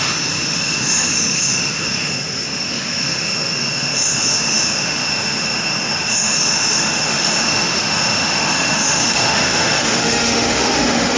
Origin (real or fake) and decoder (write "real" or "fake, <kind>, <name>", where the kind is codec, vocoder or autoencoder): fake, autoencoder, DAC-VAE